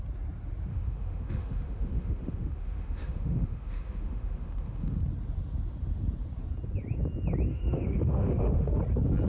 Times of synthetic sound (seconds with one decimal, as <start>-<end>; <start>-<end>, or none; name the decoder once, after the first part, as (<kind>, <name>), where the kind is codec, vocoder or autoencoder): 0.7-5.0 (autoencoder, DAC-VAE); 7.5-8.8